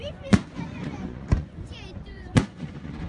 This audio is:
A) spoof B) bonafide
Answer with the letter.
A